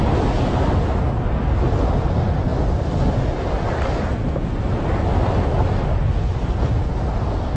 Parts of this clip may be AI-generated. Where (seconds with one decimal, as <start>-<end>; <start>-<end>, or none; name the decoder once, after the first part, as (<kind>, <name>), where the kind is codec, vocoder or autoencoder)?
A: none